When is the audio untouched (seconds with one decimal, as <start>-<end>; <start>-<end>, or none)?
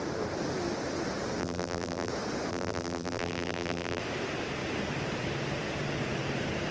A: 0.0-1.4; 2.1-2.5; 4.0-6.7